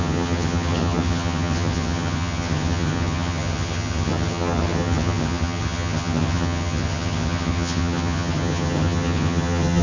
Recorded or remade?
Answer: remade